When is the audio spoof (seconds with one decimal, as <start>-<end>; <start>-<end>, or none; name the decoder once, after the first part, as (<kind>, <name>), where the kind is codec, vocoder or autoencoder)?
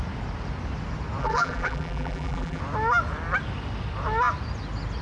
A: 1.2-2.6 (vocoder, BigVGAN v2)